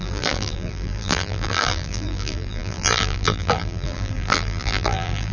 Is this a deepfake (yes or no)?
yes